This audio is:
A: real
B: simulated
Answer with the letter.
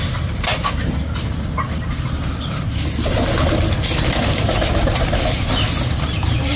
A